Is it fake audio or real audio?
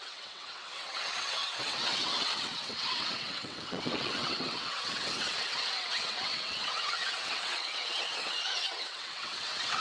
fake